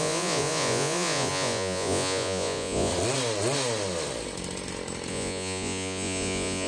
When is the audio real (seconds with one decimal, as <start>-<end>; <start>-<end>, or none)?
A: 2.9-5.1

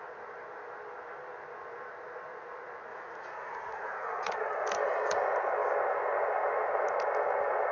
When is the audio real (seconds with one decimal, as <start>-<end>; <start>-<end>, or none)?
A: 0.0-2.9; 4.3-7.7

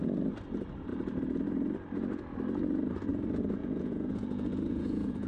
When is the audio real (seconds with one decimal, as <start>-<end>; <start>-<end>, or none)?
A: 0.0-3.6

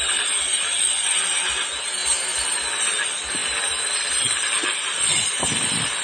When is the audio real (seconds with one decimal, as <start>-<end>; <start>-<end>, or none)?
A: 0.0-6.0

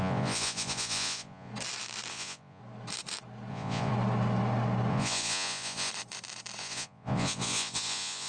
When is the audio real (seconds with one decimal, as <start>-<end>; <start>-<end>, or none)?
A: 1.5-2.1; 2.6-3.5; 3.9-4.9; 5.9-6.6

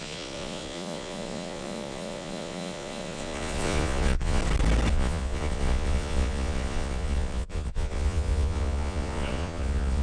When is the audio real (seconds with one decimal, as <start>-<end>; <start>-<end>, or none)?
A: 4.4-4.9

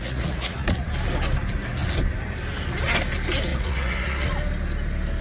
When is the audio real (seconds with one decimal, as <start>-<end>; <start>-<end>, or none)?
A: 0.9-3.5; 4.3-5.2